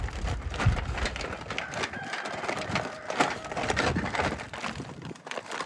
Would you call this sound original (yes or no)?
yes